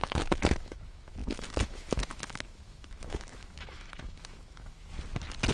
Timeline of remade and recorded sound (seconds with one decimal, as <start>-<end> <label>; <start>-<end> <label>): 0.0-4.9 remade; 4.9-5.5 recorded